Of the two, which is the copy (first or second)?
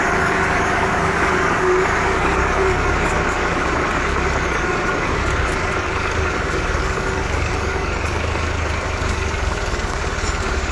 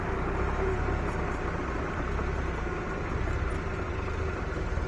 first